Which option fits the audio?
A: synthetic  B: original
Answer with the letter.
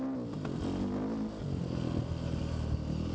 B